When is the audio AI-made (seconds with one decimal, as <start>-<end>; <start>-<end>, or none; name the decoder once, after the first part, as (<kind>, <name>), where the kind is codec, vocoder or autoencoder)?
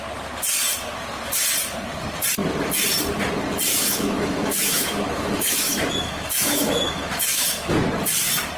3.7-7.7 (autoencoder, DAC-VAE)